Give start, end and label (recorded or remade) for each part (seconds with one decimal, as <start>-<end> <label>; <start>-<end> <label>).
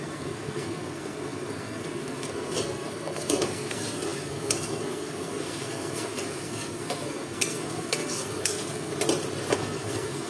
0.0-8.9 remade; 8.9-9.5 recorded; 9.5-10.3 remade